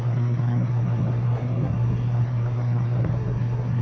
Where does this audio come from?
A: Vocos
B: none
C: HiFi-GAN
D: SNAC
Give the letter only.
D